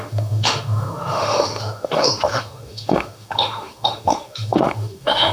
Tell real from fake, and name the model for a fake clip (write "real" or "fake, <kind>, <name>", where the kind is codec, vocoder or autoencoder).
fake, autoencoder, DAC-VAE